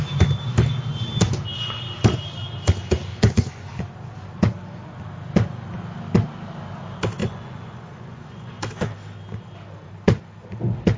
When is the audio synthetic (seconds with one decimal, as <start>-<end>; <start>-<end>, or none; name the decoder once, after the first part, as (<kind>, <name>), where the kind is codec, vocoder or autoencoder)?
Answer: 3.1-3.7 (vocoder, Vocos); 7.2-8.6